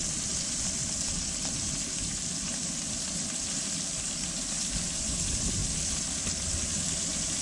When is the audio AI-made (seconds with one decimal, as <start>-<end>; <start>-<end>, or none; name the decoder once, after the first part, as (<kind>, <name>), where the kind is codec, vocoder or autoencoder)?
0.0-5.6 (vocoder, BigVGAN v2); 6.2-7.4